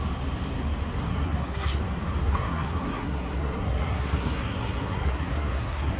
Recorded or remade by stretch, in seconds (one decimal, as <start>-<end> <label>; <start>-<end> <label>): 0.0-1.1 recorded; 1.1-1.8 remade; 1.8-2.2 recorded; 2.2-6.0 remade